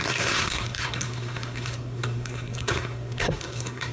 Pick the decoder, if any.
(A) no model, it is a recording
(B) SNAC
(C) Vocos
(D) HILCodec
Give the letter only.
B